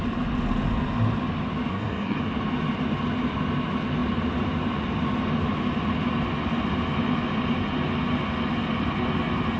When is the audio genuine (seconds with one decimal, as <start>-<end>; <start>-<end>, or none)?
0.0-1.7; 2.2-9.6